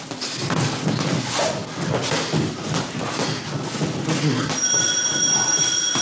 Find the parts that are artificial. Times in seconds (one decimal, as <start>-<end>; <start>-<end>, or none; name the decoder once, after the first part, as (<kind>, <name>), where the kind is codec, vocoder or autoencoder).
none